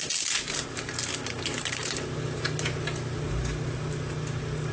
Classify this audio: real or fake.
real